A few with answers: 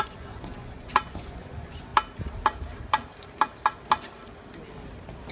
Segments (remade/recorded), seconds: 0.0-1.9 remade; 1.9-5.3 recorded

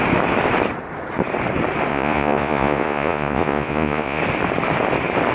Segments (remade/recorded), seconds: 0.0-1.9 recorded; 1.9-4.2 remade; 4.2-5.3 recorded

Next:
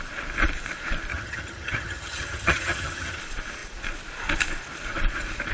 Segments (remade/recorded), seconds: 0.0-1.1 recorded; 1.1-3.2 remade; 3.2-5.5 recorded

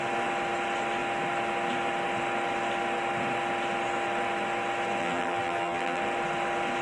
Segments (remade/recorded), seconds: 0.0-5.0 recorded; 5.0-6.0 remade; 6.0-6.8 recorded

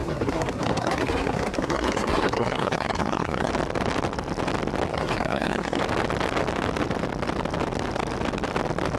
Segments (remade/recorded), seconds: 0.0-3.5 remade; 3.5-4.9 recorded; 4.9-5.8 remade; 5.8-9.0 recorded